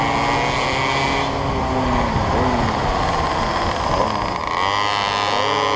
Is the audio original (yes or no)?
yes